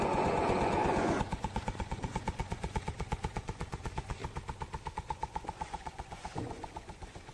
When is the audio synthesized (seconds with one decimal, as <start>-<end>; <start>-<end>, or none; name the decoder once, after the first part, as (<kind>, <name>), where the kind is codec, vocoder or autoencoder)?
0.0-4.2 (vocoder, Vocos); 4.9-7.3